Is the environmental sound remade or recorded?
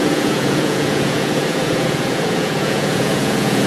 remade